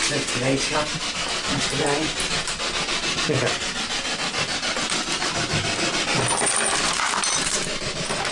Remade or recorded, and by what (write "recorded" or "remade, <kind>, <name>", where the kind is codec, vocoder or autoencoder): recorded